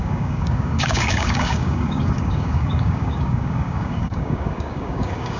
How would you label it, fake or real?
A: fake